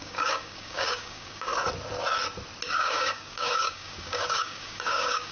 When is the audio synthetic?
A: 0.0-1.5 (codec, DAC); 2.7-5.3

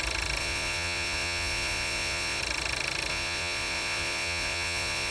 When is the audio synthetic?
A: 0.4-2.4 (vocoder, Vocos); 3.1-5.1

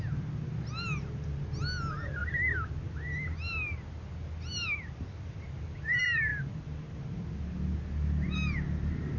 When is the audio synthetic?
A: none